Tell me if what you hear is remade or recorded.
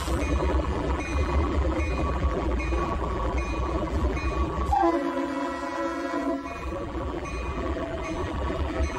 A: remade